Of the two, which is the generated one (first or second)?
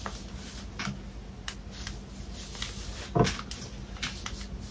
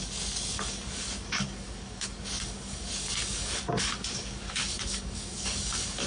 second